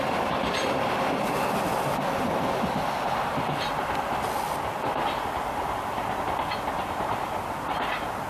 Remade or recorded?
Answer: recorded